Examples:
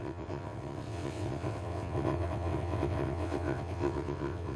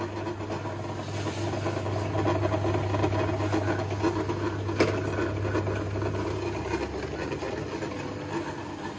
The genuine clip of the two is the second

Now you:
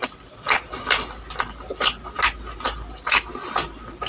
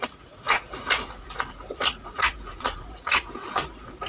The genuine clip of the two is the first